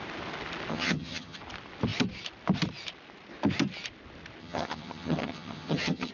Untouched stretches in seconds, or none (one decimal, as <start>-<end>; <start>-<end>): 0.0-0.7; 1.4-4.4